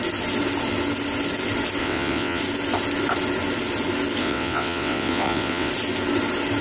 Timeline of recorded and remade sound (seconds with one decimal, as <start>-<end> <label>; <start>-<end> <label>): 0.0-1.8 recorded; 1.8-2.4 remade; 2.4-4.2 recorded; 4.2-5.7 remade; 5.7-6.6 recorded